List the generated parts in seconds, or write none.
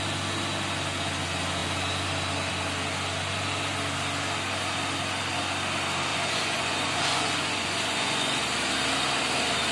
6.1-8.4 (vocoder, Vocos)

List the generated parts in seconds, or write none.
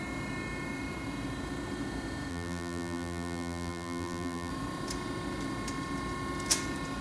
2.3-4.5 (vocoder, BigVGAN v2)